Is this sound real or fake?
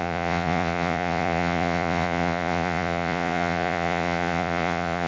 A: fake